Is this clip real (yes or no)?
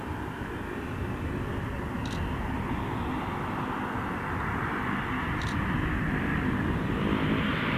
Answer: yes